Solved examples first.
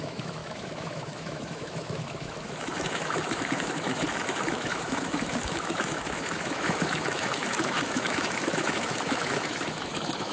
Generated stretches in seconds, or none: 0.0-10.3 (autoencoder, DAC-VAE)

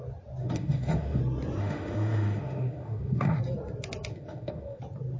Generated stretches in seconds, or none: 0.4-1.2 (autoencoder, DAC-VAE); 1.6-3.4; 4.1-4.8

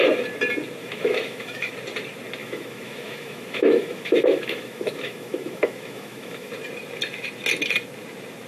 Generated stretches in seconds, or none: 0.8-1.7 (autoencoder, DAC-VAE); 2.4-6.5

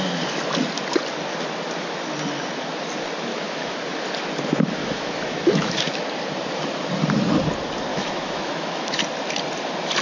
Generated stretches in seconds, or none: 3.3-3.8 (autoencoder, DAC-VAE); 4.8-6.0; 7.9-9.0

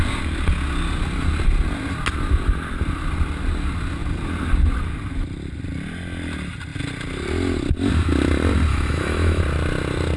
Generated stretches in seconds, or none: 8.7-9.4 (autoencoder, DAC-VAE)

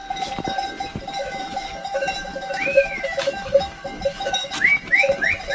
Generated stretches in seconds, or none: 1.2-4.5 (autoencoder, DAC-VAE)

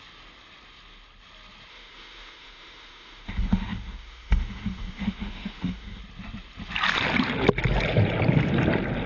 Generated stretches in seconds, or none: 1.7-6.0 (autoencoder, DAC-VAE)

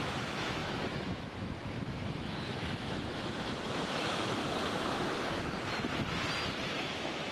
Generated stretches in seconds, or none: 0.0-4.4 (autoencoder, DAC-VAE); 6.6-7.3